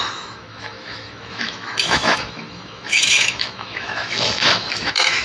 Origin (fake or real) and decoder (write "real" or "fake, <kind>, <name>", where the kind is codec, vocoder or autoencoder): fake, autoencoder, DAC-VAE